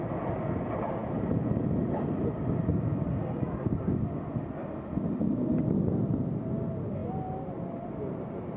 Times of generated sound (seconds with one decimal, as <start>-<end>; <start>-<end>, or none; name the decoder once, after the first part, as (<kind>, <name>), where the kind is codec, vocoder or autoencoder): none